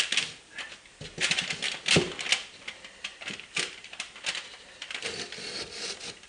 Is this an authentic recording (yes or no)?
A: yes